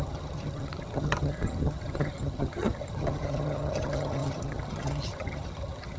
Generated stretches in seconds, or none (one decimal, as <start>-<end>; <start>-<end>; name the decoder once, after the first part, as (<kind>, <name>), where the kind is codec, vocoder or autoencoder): 0.0-6.0 (vocoder, HiFi-GAN)